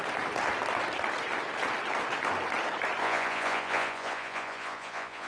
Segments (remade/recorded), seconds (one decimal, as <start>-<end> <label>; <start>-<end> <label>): 0.0-3.0 recorded; 3.0-5.3 remade